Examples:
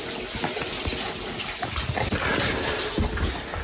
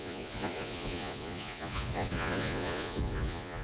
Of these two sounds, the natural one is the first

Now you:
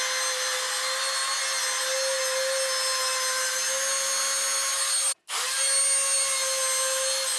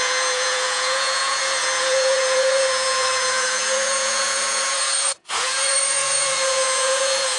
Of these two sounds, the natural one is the first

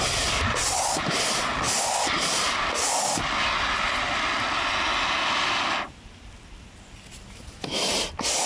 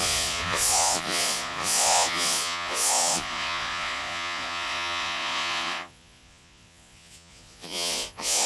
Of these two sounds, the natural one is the first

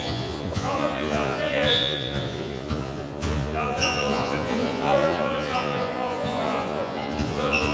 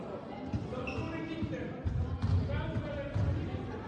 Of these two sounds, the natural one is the second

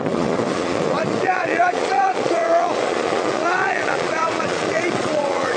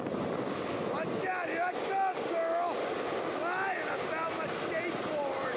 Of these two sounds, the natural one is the second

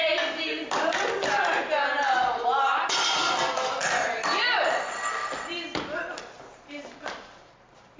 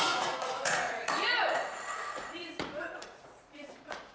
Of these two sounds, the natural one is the first